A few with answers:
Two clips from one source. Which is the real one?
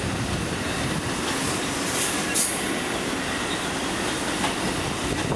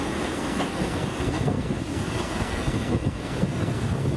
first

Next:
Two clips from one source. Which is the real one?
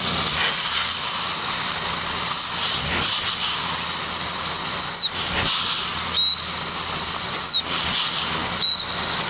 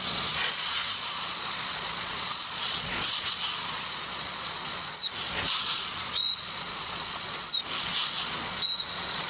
first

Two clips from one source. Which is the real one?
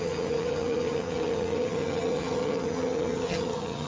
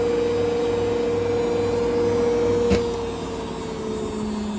second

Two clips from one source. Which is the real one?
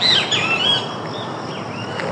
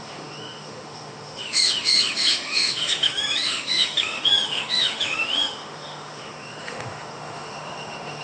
first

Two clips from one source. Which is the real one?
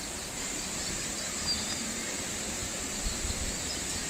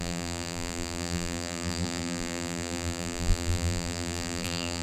first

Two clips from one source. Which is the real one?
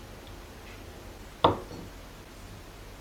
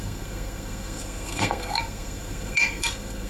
first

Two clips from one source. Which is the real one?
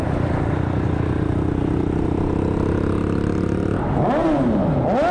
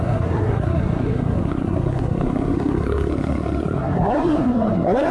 first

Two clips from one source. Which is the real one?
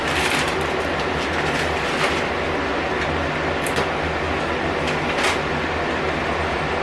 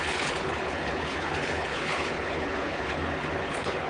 first